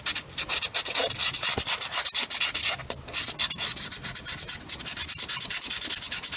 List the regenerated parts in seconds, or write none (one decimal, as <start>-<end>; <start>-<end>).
none